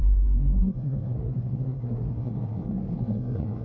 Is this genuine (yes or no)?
no